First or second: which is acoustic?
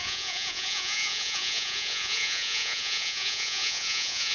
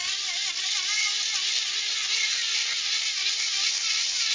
second